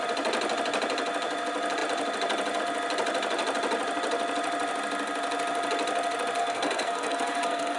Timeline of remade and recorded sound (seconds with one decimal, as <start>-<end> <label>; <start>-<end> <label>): 0.0-6.4 recorded; 6.4-7.8 remade